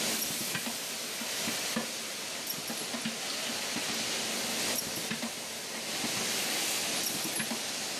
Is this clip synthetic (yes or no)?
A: no